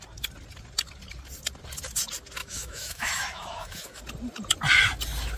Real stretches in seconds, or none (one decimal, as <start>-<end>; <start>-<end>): 0.0-2.4; 4.0-5.4